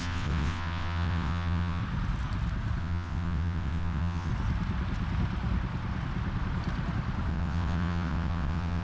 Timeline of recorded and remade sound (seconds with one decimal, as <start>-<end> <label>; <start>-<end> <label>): 0.0-1.8 remade; 1.8-2.8 recorded; 2.8-4.3 remade; 4.3-7.3 recorded; 7.3-8.8 remade